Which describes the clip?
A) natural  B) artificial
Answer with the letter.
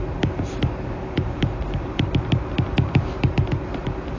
B